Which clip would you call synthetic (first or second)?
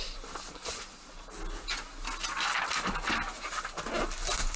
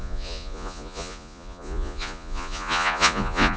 second